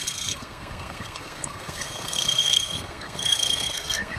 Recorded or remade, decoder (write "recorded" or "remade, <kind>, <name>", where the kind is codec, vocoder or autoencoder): remade, codec, SNAC